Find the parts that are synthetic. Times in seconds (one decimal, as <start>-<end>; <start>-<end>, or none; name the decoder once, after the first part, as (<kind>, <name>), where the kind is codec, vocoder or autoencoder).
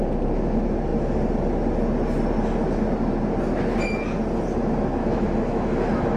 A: 5.0-6.2 (autoencoder, DAC-VAE)